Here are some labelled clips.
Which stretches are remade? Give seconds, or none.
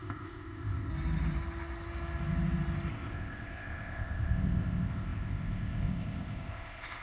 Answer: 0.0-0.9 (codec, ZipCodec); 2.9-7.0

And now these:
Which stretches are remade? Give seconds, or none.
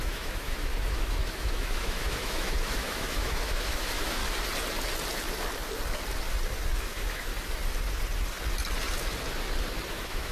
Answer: 0.0-4.2 (autoencoder, DAC-VAE); 6.8-7.3; 9.9-10.3